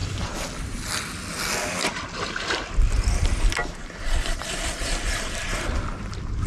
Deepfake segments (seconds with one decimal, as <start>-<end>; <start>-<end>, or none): 0.0-0.9; 1.8-2.3; 3.6-4.5